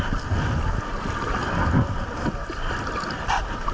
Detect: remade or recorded recorded